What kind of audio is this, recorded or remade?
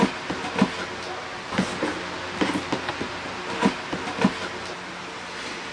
recorded